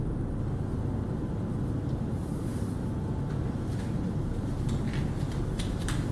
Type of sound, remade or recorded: recorded